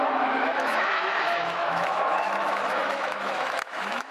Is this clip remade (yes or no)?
yes